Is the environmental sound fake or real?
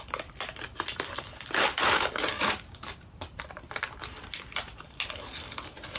real